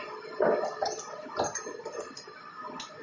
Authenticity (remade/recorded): recorded